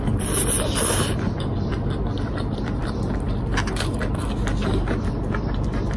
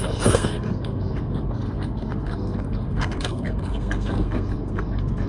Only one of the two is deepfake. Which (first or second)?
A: second